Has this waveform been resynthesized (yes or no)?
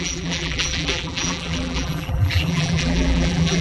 yes